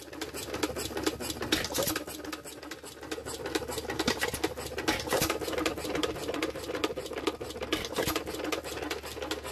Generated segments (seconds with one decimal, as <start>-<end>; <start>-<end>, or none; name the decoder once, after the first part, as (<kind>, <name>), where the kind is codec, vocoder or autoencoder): none